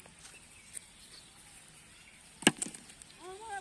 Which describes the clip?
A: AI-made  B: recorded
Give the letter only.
B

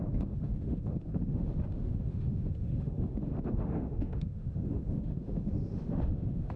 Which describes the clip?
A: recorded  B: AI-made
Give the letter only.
B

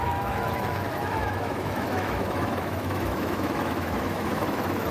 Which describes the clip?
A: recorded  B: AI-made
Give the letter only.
B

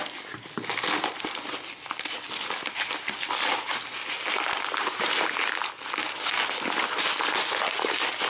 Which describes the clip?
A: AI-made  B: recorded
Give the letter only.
B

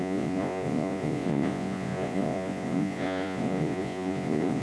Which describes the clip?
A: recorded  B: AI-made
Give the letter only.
B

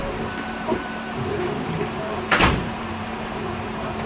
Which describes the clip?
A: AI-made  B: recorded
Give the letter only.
A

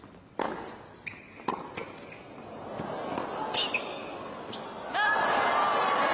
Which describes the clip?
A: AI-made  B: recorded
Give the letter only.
B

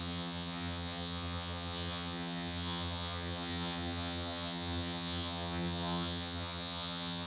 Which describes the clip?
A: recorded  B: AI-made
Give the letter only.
B